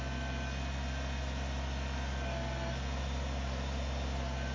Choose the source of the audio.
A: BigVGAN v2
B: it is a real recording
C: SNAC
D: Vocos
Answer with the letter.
B